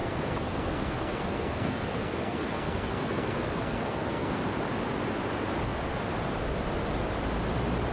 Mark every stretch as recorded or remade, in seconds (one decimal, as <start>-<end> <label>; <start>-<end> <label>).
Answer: 0.0-4.4 remade; 4.4-7.9 recorded